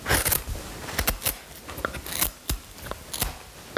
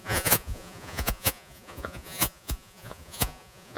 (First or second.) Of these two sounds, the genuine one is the first